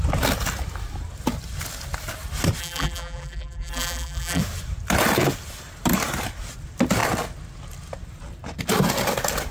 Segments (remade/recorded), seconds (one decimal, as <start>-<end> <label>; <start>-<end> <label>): 0.0-2.6 recorded; 2.6-4.4 remade; 4.4-9.5 recorded